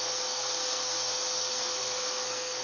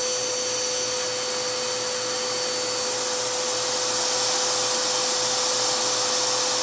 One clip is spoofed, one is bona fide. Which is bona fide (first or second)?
second